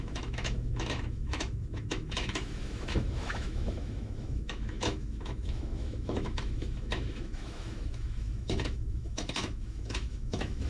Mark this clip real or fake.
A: fake